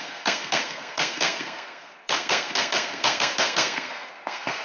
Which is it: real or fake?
fake